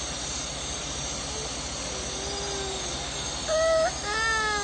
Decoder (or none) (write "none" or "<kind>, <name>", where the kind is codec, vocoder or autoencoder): none